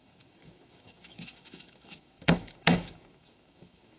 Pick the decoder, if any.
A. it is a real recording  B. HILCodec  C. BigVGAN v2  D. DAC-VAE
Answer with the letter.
D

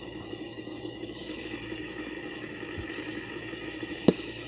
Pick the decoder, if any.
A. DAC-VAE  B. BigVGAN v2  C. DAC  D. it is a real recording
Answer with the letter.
A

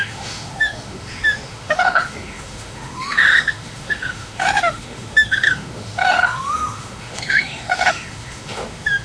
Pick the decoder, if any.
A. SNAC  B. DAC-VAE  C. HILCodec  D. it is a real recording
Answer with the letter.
B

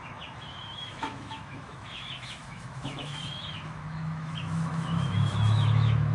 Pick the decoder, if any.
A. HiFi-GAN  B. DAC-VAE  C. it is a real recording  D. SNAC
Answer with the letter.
B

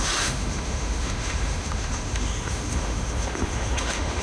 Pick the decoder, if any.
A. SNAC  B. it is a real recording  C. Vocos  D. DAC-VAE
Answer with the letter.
D